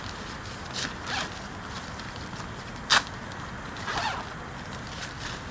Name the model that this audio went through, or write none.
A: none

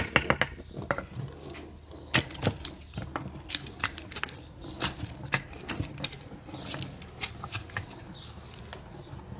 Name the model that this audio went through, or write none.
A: none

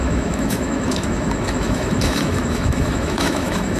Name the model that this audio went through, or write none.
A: autoencoder, DAC-VAE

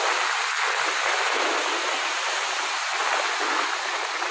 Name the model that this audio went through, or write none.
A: none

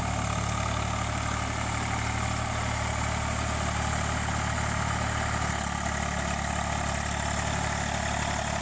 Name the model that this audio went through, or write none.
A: none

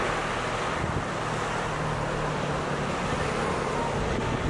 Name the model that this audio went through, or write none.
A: none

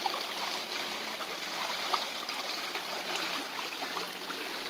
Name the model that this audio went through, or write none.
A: none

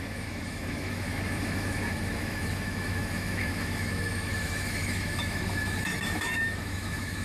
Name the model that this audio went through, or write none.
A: autoencoder, DAC-VAE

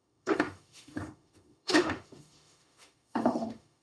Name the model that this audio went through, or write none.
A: autoencoder, DAC-VAE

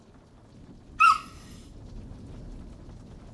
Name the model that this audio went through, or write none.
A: none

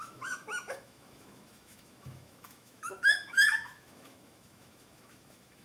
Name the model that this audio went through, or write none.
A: autoencoder, DAC-VAE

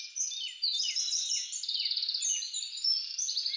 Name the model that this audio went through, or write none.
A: none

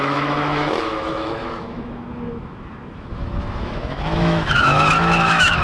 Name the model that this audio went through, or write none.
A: autoencoder, DAC-VAE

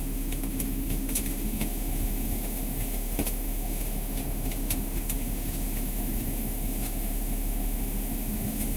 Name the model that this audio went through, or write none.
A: autoencoder, DAC-VAE